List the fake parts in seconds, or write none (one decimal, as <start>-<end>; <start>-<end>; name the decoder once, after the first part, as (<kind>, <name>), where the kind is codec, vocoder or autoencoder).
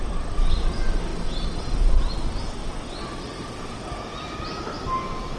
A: none